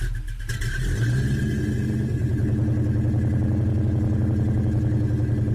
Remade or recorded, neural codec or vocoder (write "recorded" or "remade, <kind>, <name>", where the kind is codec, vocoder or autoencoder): recorded